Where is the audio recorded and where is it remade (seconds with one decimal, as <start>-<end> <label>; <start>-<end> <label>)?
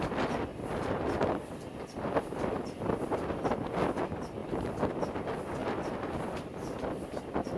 0.0-0.5 recorded; 0.5-4.0 remade; 4.0-4.4 recorded; 4.4-5.0 remade; 5.0-5.6 recorded; 5.6-7.6 remade